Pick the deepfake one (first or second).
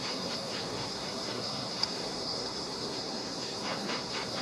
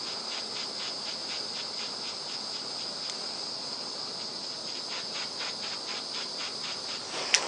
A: first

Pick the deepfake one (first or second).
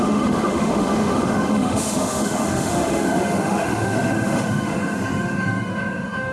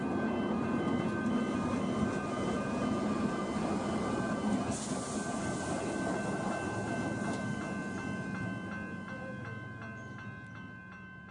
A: first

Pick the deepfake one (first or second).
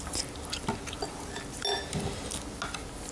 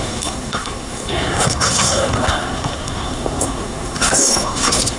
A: second